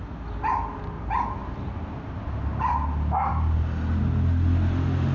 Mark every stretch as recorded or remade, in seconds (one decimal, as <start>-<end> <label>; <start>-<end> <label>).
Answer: 0.0-5.1 recorded